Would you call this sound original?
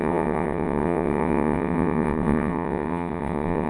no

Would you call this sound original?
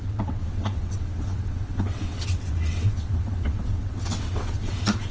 no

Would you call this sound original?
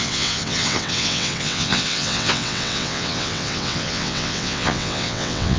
no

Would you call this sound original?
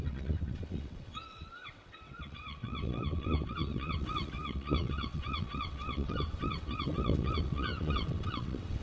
no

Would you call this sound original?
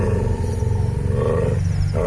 yes